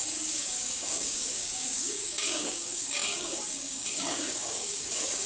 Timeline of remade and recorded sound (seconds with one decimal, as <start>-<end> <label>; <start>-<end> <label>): 0.0-5.3 remade